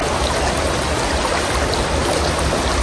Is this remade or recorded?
recorded